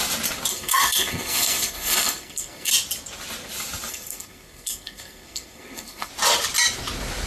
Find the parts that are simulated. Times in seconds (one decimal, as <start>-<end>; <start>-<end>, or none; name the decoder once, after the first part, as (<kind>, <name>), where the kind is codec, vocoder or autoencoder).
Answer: 0.5-2.7 (codec, SNAC); 3.9-6.1